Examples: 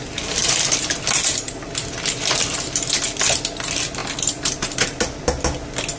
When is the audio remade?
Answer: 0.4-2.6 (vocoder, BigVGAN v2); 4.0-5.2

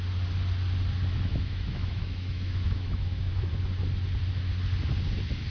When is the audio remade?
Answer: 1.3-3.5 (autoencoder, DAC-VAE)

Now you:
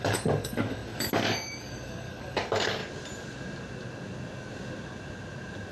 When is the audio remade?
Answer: 0.0-2.8 (codec, DAC)

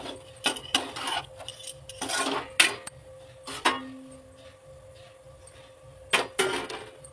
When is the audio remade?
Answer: none